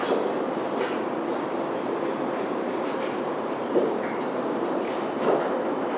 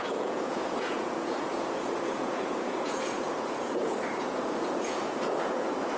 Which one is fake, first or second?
second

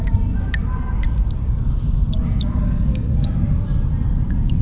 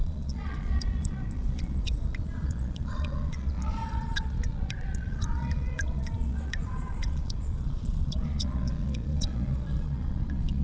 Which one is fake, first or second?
second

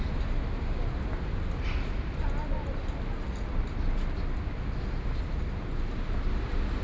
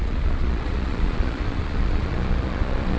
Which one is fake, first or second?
second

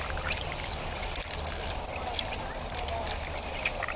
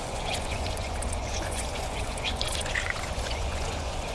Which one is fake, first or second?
second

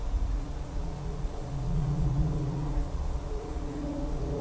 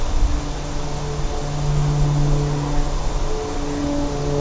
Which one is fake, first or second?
first